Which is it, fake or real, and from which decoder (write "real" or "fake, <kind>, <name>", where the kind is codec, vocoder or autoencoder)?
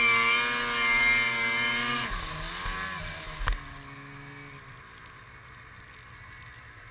real